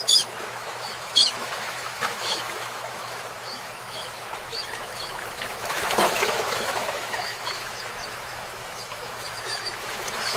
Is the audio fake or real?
fake